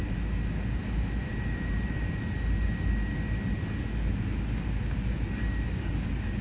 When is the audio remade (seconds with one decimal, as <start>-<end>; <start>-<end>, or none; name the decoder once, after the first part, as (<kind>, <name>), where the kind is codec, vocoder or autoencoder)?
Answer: 1.2-2.2 (vocoder, BigVGAN v2)